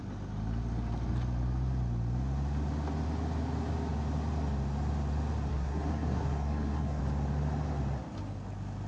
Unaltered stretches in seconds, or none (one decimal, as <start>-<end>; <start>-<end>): 0.0-5.5; 7.0-8.9

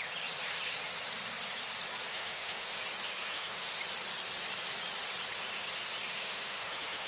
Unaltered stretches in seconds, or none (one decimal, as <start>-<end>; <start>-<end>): 0.0-2.1; 2.8-3.2; 3.8-6.1